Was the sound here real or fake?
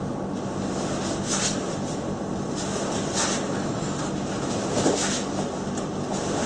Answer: real